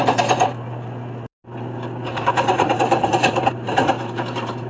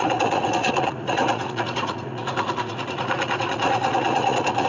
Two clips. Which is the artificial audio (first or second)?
second